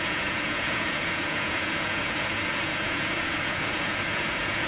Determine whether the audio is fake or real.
fake